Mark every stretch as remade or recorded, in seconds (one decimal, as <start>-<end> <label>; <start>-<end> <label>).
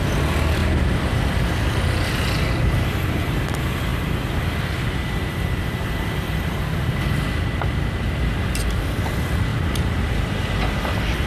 0.0-0.6 recorded; 0.6-1.1 remade; 1.1-9.5 recorded; 9.5-10.1 remade; 10.1-11.3 recorded